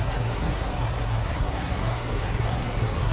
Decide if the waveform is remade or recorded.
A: remade